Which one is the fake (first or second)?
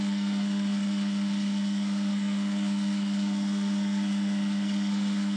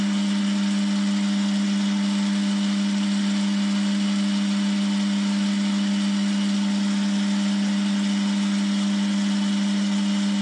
first